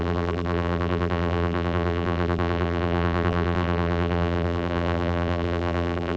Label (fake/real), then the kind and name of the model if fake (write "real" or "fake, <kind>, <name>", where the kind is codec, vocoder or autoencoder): fake, vocoder, BigVGAN v2